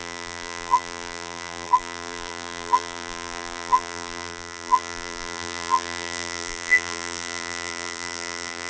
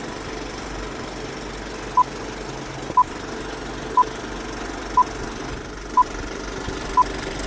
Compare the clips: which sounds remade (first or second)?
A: first